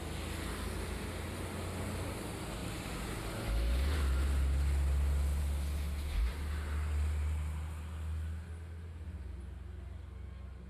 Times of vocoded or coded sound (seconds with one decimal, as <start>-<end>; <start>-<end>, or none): none